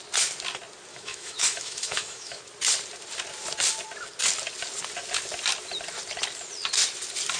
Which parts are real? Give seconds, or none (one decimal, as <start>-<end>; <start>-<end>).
0.0-0.9; 2.4-7.4